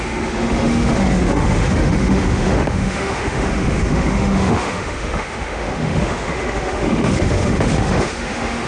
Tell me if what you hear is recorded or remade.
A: remade